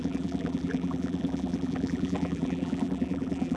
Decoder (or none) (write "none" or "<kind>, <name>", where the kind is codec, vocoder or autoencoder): vocoder, BigVGAN v2